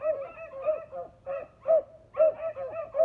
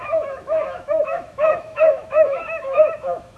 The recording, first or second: first